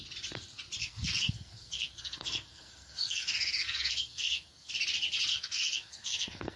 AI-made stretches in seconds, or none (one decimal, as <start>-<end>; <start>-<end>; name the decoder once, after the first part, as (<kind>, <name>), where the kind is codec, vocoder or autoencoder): 0.8-4.7 (codec, SNAC); 5.3-6.6